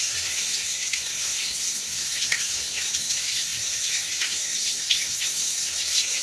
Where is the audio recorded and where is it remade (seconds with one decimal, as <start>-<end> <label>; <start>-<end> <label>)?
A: 0.0-6.2 remade